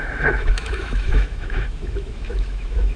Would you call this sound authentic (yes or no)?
no